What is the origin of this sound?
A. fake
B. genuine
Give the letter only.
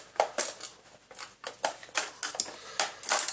B